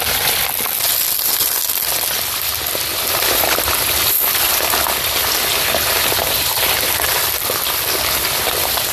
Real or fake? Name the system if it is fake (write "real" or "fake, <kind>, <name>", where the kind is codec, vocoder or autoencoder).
real